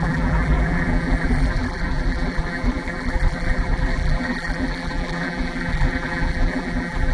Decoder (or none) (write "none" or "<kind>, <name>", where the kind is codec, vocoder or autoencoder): vocoder, BigVGAN v2